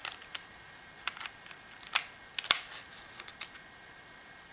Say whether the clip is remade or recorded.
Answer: recorded